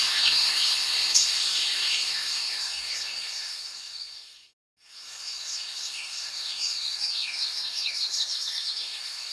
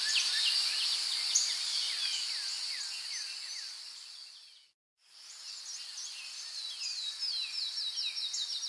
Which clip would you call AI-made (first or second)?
first